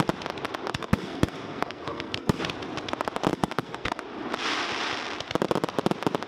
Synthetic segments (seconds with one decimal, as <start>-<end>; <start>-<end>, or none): 0.7-2.4; 3.3-4.0